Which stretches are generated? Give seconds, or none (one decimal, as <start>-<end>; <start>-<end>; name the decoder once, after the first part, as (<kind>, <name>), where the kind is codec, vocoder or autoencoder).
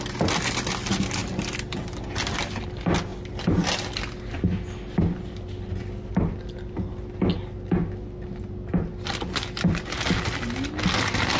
none